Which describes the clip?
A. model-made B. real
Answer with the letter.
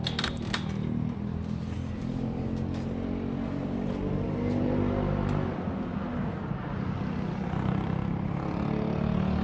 B